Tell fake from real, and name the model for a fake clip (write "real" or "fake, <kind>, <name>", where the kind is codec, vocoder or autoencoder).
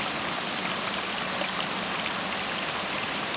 real